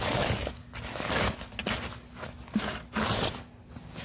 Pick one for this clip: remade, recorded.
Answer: recorded